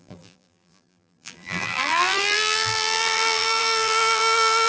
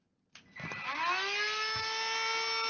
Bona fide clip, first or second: second